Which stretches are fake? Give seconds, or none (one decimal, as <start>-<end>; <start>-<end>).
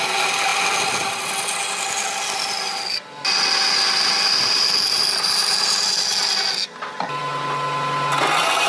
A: none